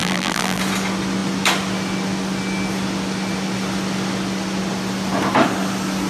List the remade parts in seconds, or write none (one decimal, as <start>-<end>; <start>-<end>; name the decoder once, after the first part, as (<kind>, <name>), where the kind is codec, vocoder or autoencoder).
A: 0.0-0.6 (vocoder, BigVGAN v2)